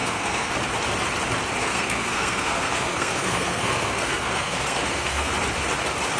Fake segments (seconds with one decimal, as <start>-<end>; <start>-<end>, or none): 0.0-0.5; 1.6-5.3